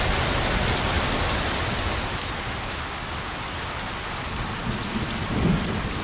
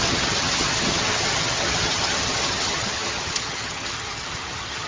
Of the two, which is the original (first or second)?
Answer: first